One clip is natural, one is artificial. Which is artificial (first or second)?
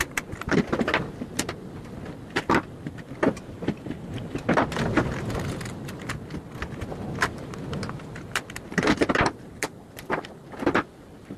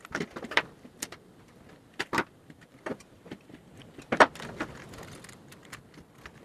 second